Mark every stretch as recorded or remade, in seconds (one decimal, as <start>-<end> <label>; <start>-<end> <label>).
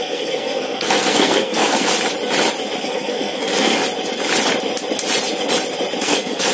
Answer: 0.0-1.9 remade; 1.9-2.8 recorded; 2.8-3.8 remade; 3.8-6.0 recorded; 6.0-6.5 remade